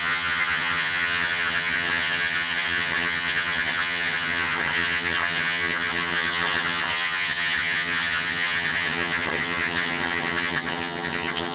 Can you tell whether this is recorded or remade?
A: remade